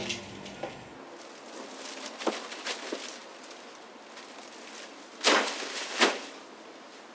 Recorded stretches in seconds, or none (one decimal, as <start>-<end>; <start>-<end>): 0.0-7.1